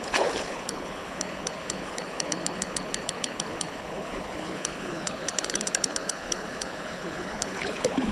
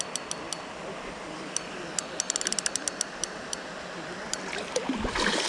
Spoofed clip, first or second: first